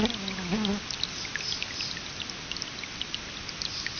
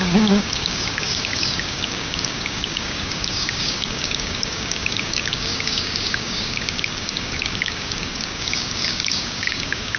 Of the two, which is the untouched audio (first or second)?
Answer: first